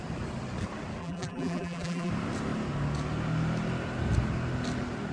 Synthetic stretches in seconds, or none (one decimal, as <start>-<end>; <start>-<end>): 1.0-2.1